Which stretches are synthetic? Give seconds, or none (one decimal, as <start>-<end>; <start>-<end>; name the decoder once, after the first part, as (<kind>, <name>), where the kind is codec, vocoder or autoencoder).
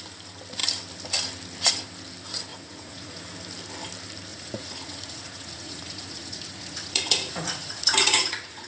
2.5-3.2 (vocoder, Vocos); 4.3-8.7